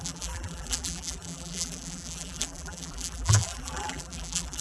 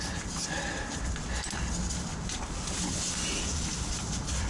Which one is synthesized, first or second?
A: first